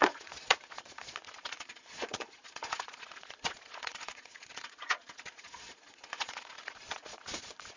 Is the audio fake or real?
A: fake